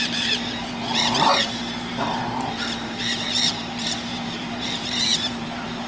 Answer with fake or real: fake